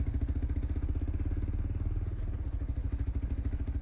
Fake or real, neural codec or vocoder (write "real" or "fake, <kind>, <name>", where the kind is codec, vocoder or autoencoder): real